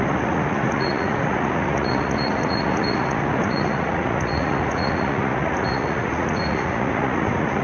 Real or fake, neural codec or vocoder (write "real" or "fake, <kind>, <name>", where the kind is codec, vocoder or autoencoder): fake, vocoder, Vocos